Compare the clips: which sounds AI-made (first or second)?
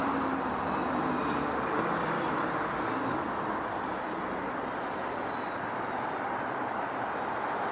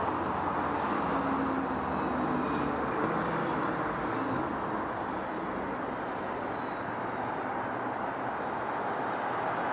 first